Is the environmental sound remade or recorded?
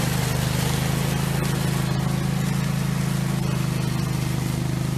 recorded